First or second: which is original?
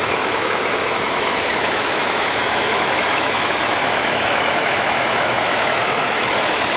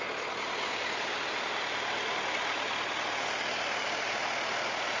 second